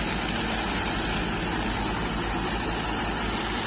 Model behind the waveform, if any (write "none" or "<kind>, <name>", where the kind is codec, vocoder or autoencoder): none